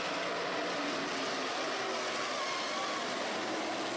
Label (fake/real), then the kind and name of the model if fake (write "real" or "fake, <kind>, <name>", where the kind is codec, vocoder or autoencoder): real